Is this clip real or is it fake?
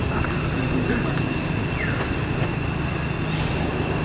real